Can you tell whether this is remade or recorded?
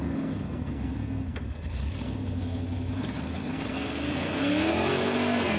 remade